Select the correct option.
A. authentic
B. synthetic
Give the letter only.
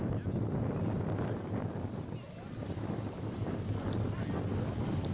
A